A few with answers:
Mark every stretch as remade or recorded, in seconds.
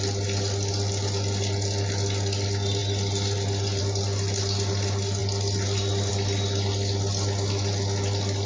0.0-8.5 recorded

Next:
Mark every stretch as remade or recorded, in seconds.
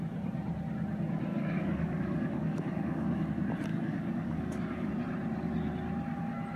0.0-1.3 recorded; 1.3-3.3 remade; 3.3-3.7 recorded; 3.7-4.9 remade; 4.9-6.6 recorded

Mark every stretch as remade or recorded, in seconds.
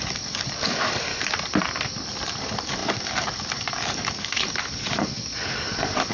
0.0-1.1 remade; 1.1-2.4 recorded; 2.4-6.1 remade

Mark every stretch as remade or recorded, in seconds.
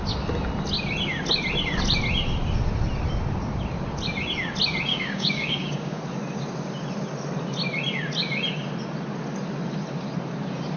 0.0-4.9 recorded; 4.9-6.0 remade; 6.0-10.8 recorded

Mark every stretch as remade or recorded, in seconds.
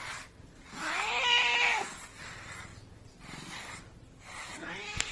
0.0-5.1 recorded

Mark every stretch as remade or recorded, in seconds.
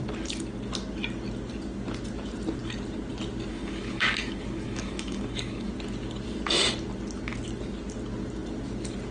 0.0-3.5 recorded; 3.5-5.7 remade; 5.7-9.1 recorded